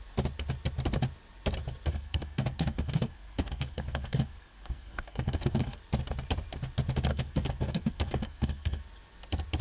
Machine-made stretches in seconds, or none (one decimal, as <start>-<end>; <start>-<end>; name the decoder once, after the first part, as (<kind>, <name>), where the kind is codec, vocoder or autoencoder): 1.9-5.8 (codec, SNAC); 7.1-8.8